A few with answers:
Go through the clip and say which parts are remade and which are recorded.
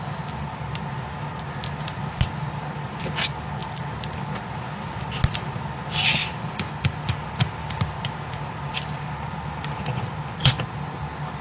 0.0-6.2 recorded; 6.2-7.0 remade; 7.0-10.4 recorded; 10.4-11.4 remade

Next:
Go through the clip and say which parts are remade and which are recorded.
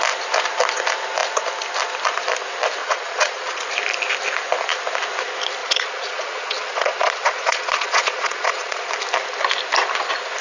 0.0-2.8 recorded; 2.8-3.6 remade; 3.6-5.6 recorded; 5.6-8.8 remade; 8.8-10.4 recorded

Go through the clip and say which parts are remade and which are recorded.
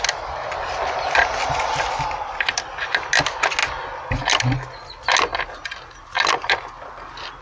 0.0-7.4 recorded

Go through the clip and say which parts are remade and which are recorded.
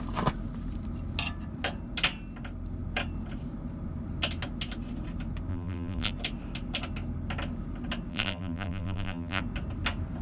0.0-5.5 recorded; 5.5-6.1 remade; 6.1-8.1 recorded; 8.1-9.4 remade; 9.4-10.2 recorded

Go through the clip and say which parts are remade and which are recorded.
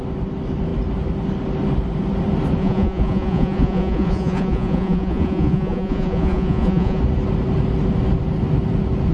0.0-2.6 recorded; 2.6-7.0 remade; 7.0-9.1 recorded